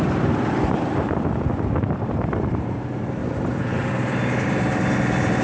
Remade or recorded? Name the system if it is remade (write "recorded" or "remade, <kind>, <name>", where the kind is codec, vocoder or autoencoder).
remade, vocoder, BigVGAN v2